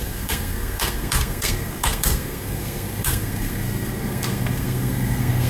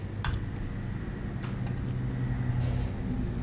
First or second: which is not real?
first